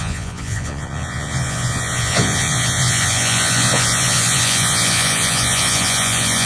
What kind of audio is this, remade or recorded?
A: remade